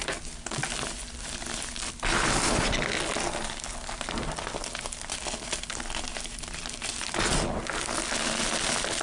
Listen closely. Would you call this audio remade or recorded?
recorded